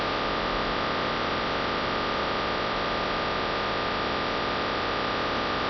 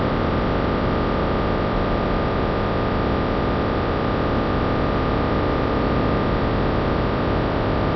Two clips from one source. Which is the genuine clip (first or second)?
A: first